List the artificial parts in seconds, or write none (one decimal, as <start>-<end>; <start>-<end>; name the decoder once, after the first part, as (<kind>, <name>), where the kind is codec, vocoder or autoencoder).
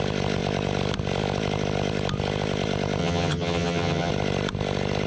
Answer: 3.0-4.1 (vocoder, HiFi-GAN)